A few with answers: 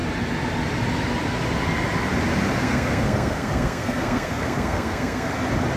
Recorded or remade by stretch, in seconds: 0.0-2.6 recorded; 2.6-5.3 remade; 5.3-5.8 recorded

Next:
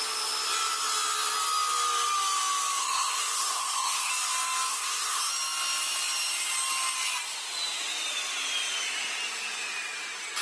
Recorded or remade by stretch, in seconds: 0.0-2.8 recorded; 2.8-4.1 remade; 4.1-4.7 recorded; 4.7-5.3 remade; 5.3-10.4 recorded

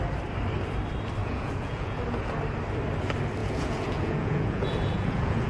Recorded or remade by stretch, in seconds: 0.0-1.2 recorded; 1.2-2.0 remade; 2.0-3.4 recorded; 3.4-5.5 remade

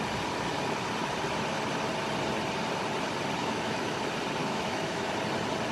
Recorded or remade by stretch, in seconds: 0.0-3.4 recorded; 3.4-4.0 remade; 4.0-4.4 recorded; 4.4-5.1 remade; 5.1-5.7 recorded

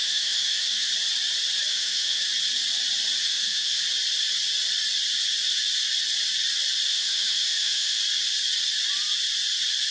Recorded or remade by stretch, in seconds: 0.0-0.9 remade; 0.9-1.7 recorded; 1.7-2.2 remade; 2.2-3.2 recorded; 3.2-3.8 remade; 3.8-6.9 recorded; 6.9-8.0 remade; 8.0-9.9 recorded

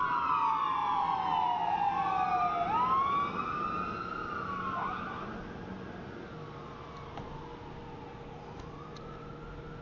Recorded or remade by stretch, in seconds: 0.0-9.8 recorded

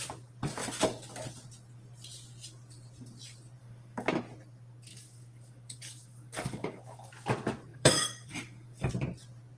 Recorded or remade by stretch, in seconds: 0.0-0.6 recorded; 0.6-1.1 remade; 1.1-3.6 recorded; 3.6-4.1 remade; 4.1-4.9 recorded; 4.9-7.1 remade; 7.1-7.7 recorded; 7.7-8.9 remade; 8.9-9.6 recorded